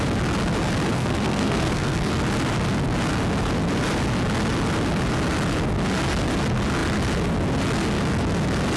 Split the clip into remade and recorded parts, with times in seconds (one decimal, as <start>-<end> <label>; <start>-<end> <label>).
0.0-0.9 recorded; 0.9-2.1 remade; 2.1-8.8 recorded